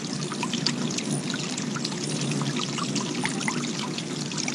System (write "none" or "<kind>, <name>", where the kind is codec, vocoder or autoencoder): none